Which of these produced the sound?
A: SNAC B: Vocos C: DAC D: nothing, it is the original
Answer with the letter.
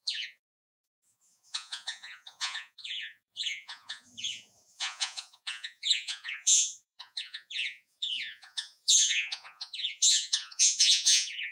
B